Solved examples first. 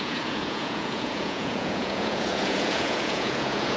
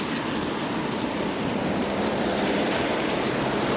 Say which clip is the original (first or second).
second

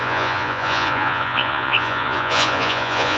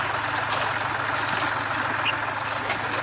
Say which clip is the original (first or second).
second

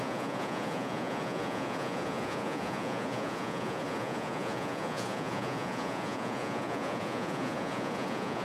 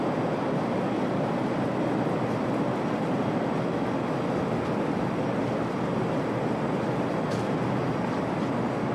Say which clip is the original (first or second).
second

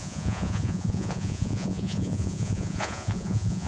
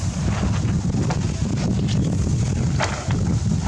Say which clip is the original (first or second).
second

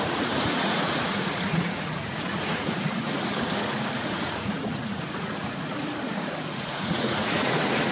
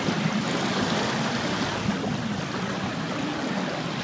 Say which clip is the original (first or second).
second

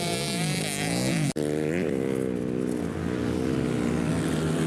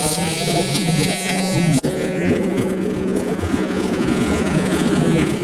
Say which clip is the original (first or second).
first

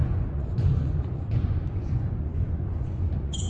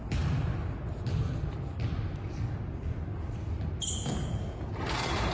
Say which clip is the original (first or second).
second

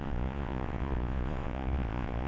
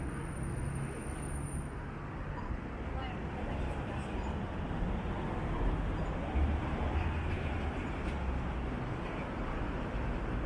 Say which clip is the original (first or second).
second